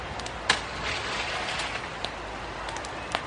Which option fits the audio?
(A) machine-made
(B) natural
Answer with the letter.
B